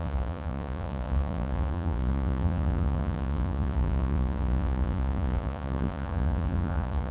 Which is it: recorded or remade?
remade